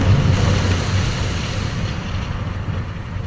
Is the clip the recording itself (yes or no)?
yes